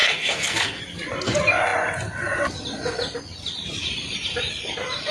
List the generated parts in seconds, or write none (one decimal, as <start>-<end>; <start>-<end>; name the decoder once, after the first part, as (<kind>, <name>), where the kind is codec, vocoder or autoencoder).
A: 0.0-0.8 (codec, SNAC)